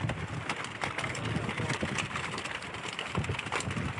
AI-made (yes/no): no